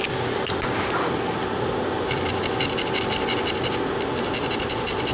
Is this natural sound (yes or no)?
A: yes